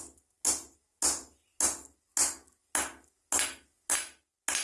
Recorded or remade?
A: recorded